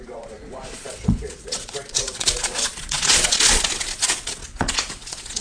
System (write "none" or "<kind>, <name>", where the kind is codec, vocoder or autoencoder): vocoder, Vocos